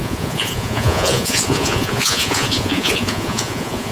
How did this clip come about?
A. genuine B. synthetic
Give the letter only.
B